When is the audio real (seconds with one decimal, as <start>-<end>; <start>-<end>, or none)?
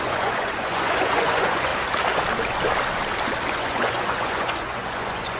1.7-3.5